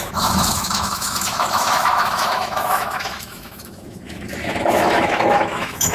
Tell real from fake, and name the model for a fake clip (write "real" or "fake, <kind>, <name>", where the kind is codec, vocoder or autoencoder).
fake, autoencoder, DAC-VAE